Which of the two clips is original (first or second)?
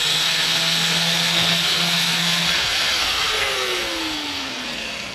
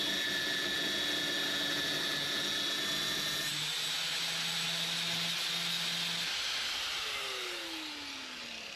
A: second